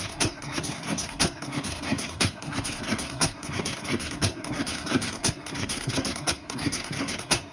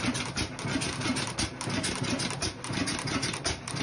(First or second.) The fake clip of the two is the first